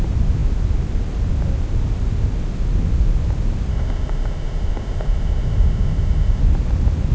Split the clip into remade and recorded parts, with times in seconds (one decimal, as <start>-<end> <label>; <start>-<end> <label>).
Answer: 0.0-3.7 recorded; 3.7-6.4 remade; 6.4-7.1 recorded